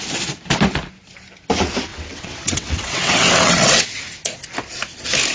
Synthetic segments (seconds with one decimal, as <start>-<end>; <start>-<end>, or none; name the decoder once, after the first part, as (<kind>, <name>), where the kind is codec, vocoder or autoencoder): 1.9-4.0 (vocoder, WaveNeXt)